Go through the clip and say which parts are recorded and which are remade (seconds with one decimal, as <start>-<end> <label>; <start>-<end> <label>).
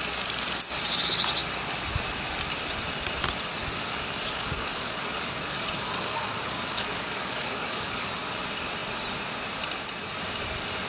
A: 0.0-3.6 recorded; 3.6-8.1 remade; 8.1-10.9 recorded